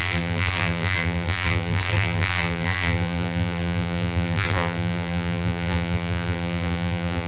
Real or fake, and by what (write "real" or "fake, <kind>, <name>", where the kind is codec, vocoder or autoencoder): fake, vocoder, BigVGAN v2